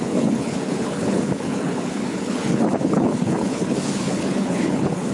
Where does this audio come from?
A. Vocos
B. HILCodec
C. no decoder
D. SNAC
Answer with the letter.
B